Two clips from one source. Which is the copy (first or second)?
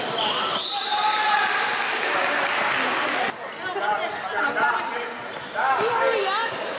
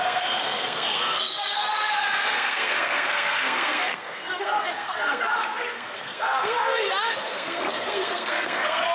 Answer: second